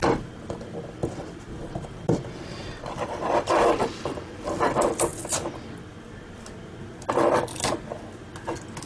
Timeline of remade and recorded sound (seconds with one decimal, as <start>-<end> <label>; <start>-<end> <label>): 0.0-8.9 recorded